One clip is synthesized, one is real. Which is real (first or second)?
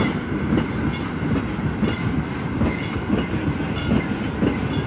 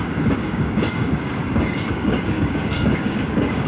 first